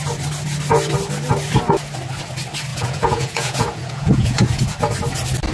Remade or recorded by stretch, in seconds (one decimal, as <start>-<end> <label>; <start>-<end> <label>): 0.0-2.7 recorded; 2.7-4.6 remade; 4.6-5.5 recorded